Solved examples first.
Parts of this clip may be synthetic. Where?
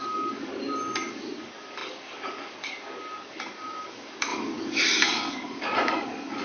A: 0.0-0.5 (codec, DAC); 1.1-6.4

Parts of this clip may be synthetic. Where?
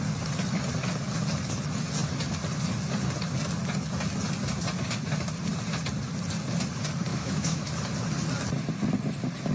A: 7.1-7.7 (autoencoder, DAC-VAE)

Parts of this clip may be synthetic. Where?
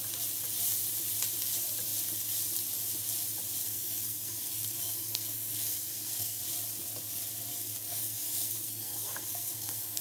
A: 3.6-6.4 (codec, SNAC); 7.5-10.0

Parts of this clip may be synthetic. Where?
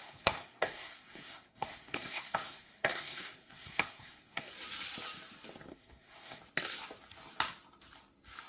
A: 0.0-4.5 (codec, SNAC); 5.7-6.4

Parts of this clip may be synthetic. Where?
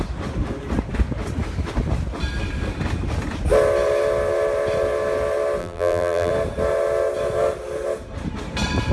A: 5.6-6.3 (vocoder, BigVGAN v2)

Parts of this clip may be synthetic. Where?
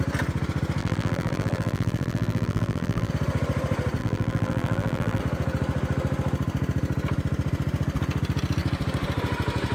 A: 0.8-3.1 (vocoder, BigVGAN v2); 4.0-5.2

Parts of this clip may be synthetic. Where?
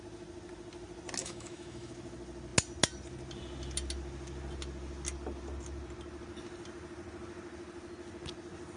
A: 1.2-1.9 (autoencoder, DAC-VAE)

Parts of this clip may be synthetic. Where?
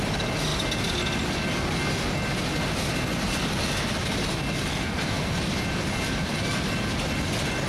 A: 4.7-5.4 (codec, SNAC)